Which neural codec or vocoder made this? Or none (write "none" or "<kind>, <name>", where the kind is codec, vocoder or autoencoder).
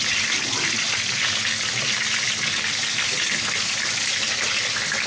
none